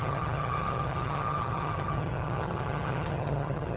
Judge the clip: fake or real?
fake